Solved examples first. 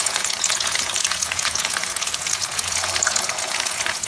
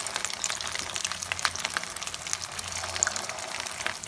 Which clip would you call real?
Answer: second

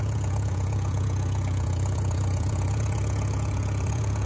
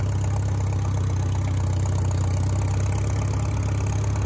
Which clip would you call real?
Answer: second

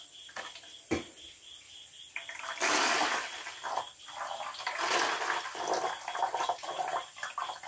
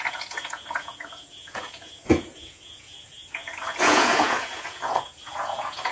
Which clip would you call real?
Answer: first